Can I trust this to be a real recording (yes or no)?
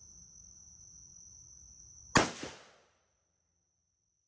yes